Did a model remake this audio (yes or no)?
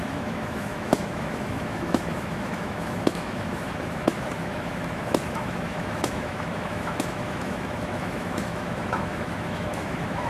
yes